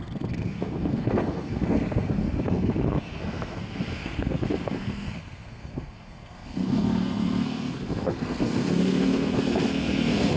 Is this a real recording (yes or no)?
no